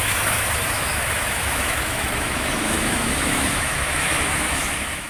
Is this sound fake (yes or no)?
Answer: yes